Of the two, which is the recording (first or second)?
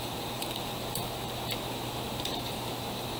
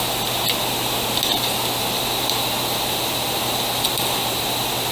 second